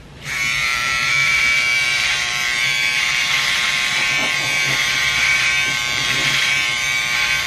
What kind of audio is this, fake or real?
fake